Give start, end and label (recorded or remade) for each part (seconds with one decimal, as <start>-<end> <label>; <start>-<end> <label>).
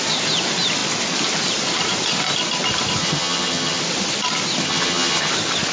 0.0-3.0 recorded; 3.0-3.8 remade; 3.8-4.6 recorded; 4.6-5.3 remade; 5.3-5.7 recorded